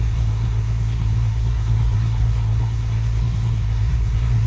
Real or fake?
fake